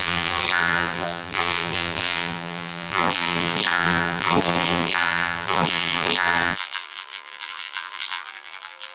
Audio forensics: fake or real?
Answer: fake